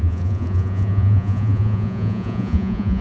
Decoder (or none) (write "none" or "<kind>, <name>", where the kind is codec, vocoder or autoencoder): vocoder, Vocos